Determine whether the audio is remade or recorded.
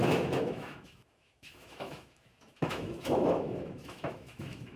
remade